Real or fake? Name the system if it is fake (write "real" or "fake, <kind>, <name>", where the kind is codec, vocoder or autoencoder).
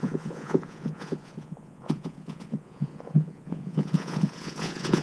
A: fake, vocoder, Vocos